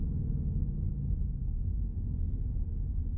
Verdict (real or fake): fake